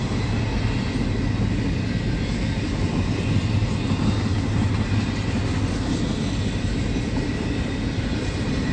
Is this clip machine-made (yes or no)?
no